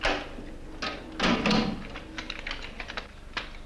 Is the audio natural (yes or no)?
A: yes